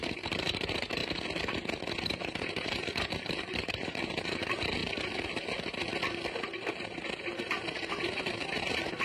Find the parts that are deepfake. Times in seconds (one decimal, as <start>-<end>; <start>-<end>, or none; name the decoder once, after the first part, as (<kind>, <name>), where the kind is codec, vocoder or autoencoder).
0.0-1.0 (vocoder, BigVGAN v2); 2.1-4.8; 7.2-9.0